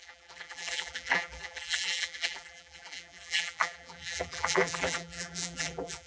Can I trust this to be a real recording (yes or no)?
no